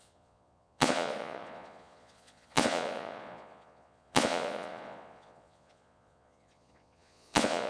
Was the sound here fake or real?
fake